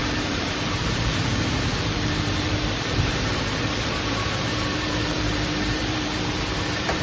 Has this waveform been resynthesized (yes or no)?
yes